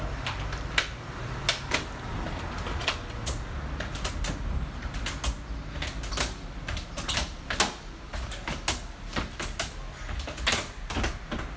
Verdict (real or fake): real